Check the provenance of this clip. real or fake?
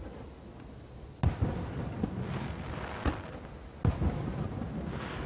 real